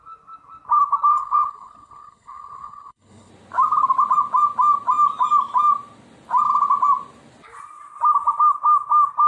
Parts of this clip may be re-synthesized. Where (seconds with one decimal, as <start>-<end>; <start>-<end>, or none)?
1.1-3.3